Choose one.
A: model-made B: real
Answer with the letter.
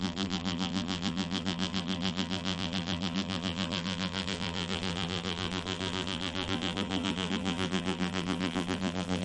A